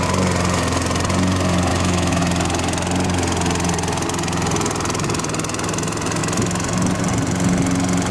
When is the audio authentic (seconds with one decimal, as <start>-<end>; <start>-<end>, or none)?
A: 0.0-1.7; 2.2-8.1